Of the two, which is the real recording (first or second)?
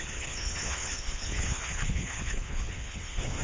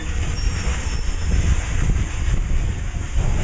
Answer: second